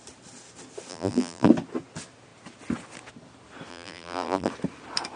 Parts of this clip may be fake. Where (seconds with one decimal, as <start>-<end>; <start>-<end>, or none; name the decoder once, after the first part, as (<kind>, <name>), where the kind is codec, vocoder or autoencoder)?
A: 0.9-1.5 (vocoder, BigVGAN v2); 3.7-4.5